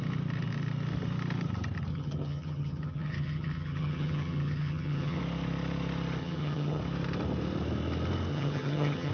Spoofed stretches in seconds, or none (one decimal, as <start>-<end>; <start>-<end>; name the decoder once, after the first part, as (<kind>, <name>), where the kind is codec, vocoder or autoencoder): 1.9-5.2 (vocoder, HiFi-GAN); 6.2-6.8; 8.3-9.1